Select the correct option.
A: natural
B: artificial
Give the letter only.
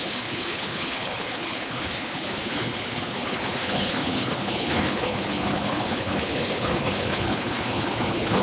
B